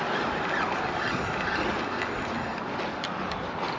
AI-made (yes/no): no